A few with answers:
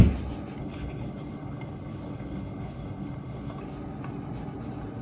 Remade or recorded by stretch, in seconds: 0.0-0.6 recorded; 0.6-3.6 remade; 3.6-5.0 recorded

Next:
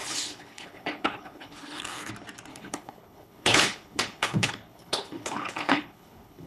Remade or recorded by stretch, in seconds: 0.0-2.1 remade; 2.1-2.5 recorded; 2.5-6.5 remade

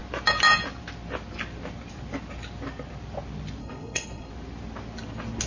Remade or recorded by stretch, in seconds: 0.0-3.6 recorded; 3.6-4.3 remade; 4.3-5.5 recorded

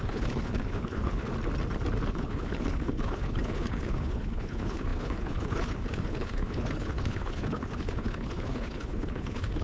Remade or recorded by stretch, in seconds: 0.0-1.3 remade; 1.3-2.1 recorded; 2.1-9.6 remade

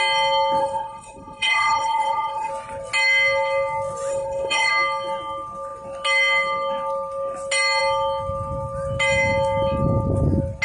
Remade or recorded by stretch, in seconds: 0.0-0.6 recorded; 0.6-2.5 remade; 2.5-4.1 recorded; 4.1-4.7 remade; 4.7-10.6 recorded

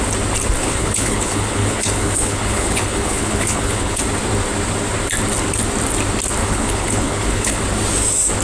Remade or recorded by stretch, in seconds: 0.0-0.6 recorded; 0.6-4.0 remade; 4.0-6.4 recorded; 6.4-7.6 remade; 7.6-8.4 recorded

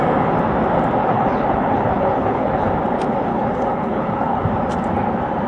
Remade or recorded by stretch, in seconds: 0.0-1.0 recorded; 1.0-2.7 remade; 2.7-3.3 recorded; 3.3-4.4 remade; 4.4-5.5 recorded

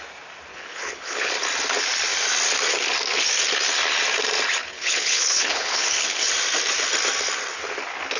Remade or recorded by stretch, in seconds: 0.0-0.5 recorded; 0.5-1.3 remade; 1.3-4.6 recorded; 4.6-6.3 remade; 6.3-8.2 recorded